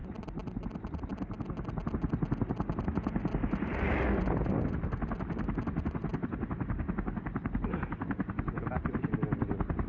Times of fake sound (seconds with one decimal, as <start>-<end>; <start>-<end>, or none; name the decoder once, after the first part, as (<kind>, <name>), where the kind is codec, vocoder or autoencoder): none